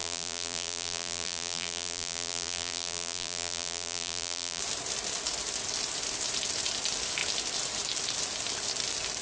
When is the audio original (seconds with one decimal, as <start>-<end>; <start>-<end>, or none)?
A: 4.6-9.2